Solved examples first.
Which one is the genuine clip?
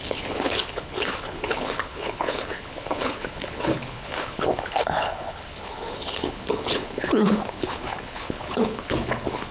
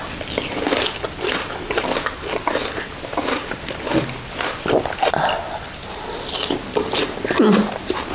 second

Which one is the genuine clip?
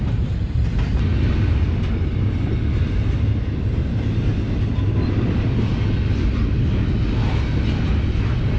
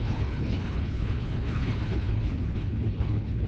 first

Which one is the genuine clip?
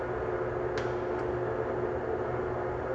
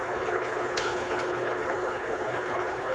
first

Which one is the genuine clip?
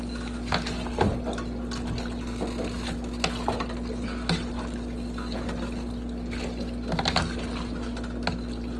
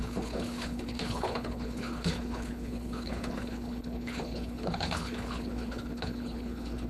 first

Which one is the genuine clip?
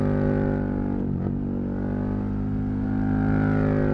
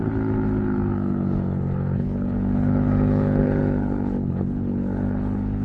first